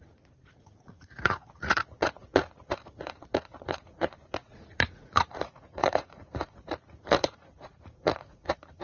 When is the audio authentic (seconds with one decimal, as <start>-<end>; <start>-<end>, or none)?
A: none